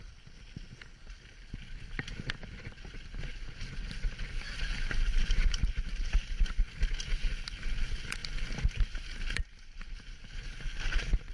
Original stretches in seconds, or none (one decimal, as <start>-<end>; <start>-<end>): 0.0-11.3